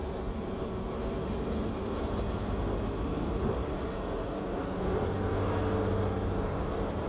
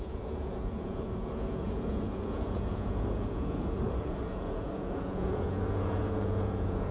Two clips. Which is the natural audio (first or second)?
first